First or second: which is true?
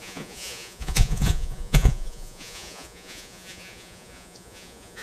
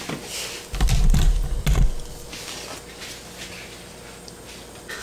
second